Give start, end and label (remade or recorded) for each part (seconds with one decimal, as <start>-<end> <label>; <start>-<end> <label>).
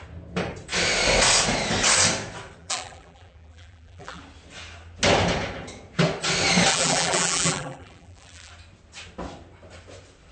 0.0-2.6 recorded; 2.6-4.2 remade; 4.2-6.7 recorded; 6.7-8.5 remade; 8.5-10.3 recorded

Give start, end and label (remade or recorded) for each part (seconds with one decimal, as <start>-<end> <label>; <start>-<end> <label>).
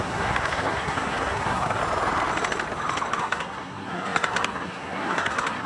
0.0-1.8 remade; 1.8-3.2 recorded; 3.2-5.7 remade